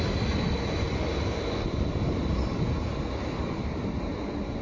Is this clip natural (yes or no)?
yes